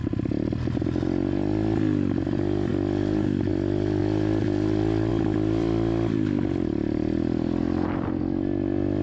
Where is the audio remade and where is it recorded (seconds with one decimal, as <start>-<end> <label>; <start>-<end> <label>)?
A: 0.0-2.7 remade; 2.7-3.5 recorded; 3.5-4.0 remade; 4.0-5.1 recorded; 5.1-9.0 remade